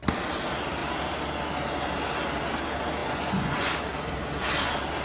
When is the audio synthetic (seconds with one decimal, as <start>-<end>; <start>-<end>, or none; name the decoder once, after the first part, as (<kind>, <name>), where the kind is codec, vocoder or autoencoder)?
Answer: 3.0-3.7 (vocoder, Vocos)